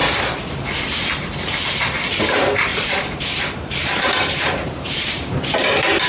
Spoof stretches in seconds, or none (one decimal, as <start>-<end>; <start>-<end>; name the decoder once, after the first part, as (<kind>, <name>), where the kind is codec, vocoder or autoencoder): 2.2-6.1 (vocoder, BigVGAN v2)